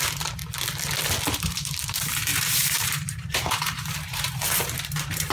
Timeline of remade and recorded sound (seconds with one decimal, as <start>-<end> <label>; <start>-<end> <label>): 0.0-0.4 remade; 0.4-1.3 recorded; 1.3-5.3 remade